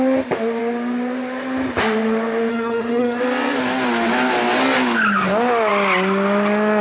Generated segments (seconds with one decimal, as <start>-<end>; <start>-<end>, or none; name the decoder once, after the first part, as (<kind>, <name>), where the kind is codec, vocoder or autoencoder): 2.5-3.2 (codec, SNAC)